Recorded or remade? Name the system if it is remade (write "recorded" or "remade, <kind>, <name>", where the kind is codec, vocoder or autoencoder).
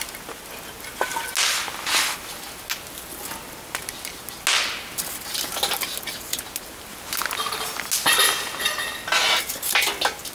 recorded